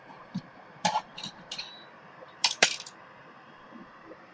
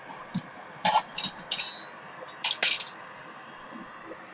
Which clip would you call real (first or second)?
second